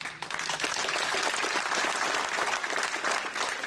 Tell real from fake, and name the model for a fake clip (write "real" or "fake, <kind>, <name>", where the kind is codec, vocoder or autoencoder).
real